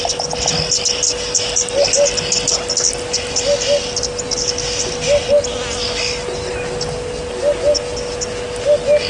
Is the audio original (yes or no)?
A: yes